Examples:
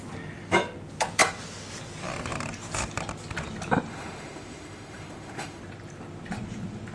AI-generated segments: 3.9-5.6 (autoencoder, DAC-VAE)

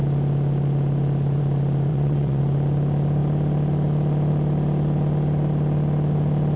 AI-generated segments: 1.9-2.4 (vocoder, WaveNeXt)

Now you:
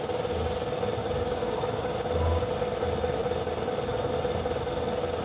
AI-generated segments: 1.0-2.5 (codec, DAC)

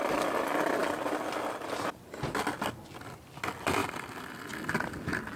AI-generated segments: none

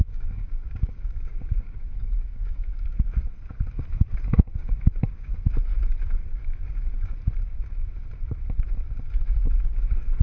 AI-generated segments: 0.0-2.9 (codec, DAC); 4.6-5.3; 6.2-7.1